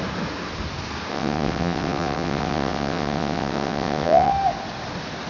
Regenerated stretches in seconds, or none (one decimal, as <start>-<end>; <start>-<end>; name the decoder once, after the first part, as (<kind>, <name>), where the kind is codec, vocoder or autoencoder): 1.1-4.3 (vocoder, WaveNeXt)